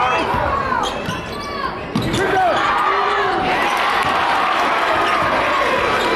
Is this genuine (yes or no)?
yes